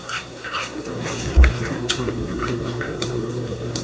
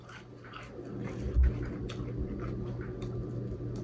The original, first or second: second